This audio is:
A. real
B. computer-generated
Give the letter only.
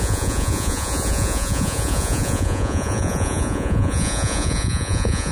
B